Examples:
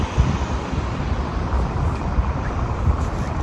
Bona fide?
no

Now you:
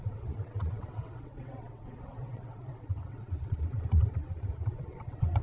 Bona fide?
no